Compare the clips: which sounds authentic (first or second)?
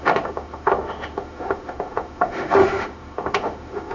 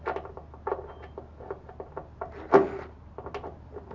second